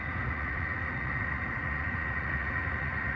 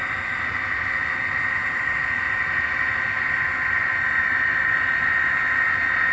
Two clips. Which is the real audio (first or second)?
second